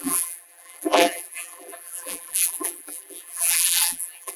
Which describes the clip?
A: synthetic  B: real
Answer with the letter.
A